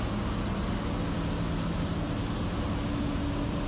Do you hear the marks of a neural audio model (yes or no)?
no